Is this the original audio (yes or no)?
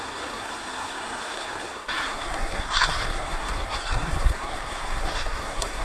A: no